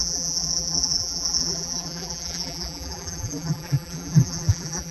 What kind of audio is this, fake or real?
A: fake